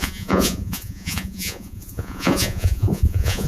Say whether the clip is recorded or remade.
remade